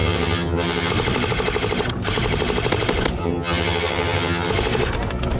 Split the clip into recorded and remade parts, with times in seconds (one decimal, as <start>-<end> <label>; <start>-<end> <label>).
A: 0.0-0.9 remade; 0.9-3.2 recorded; 3.2-4.5 remade; 4.5-5.4 recorded

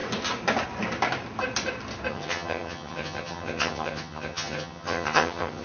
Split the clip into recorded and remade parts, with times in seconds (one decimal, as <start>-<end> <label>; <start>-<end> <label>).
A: 0.0-2.1 recorded; 2.1-5.6 remade

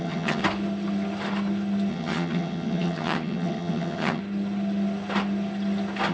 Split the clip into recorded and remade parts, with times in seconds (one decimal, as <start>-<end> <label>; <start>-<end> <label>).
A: 0.0-0.4 remade; 0.4-1.9 recorded; 1.9-4.2 remade; 4.2-6.1 recorded

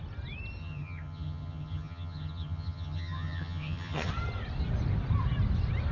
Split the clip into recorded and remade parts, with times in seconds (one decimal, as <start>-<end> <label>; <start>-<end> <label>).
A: 0.0-0.6 recorded; 0.6-4.1 remade; 4.1-5.9 recorded

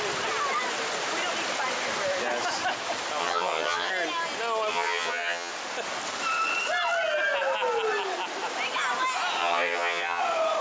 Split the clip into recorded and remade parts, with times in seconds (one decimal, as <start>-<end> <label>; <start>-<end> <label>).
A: 0.0-3.2 recorded; 3.2-3.9 remade; 3.9-4.7 recorded; 4.7-5.5 remade; 5.5-9.4 recorded; 9.4-10.2 remade; 10.2-10.6 recorded

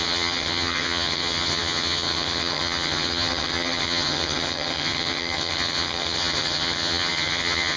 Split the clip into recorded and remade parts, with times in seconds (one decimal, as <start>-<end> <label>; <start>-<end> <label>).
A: 0.0-7.8 remade